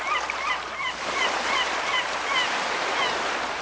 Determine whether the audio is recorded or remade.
remade